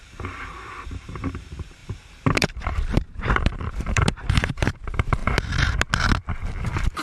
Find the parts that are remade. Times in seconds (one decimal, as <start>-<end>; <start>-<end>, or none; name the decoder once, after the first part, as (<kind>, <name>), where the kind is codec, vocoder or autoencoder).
0.0-5.2 (vocoder, BigVGAN v2); 6.6-7.0